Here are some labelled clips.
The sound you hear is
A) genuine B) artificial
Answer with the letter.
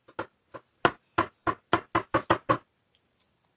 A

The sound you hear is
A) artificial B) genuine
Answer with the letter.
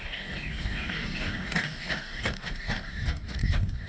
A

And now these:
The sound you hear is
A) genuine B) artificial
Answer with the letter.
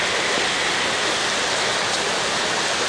A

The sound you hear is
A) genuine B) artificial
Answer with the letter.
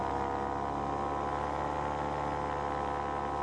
A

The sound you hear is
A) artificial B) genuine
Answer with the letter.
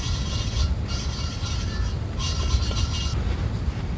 B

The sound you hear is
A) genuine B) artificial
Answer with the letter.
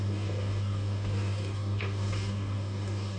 B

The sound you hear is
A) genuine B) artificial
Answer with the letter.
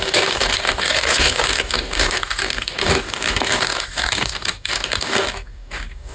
B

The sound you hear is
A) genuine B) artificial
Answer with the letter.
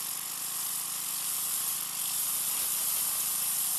A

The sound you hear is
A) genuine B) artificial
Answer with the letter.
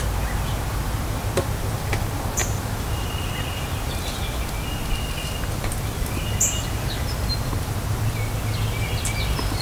A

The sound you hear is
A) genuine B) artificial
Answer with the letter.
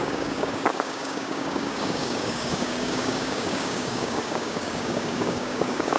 B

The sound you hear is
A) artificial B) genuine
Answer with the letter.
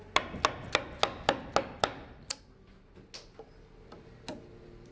B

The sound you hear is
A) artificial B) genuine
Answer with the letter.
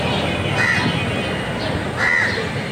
B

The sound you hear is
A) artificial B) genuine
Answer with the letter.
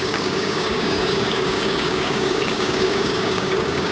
A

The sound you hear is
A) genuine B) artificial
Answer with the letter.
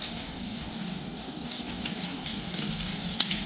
B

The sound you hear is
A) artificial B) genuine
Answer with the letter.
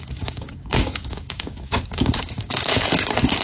A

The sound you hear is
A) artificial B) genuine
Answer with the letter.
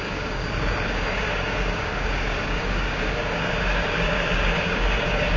A